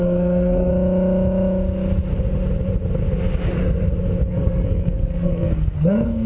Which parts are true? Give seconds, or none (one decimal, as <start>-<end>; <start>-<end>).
0.7-4.3